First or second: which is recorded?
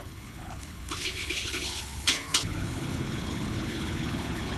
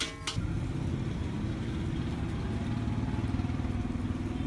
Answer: second